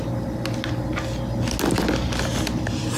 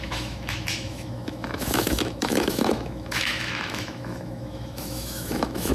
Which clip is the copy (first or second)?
second